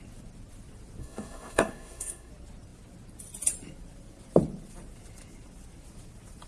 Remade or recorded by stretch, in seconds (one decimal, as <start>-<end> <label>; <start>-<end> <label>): 0.0-1.0 recorded; 1.0-2.3 remade; 2.3-6.5 recorded